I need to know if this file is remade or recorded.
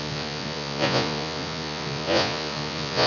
remade